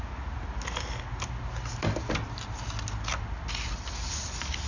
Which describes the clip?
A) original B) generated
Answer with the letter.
A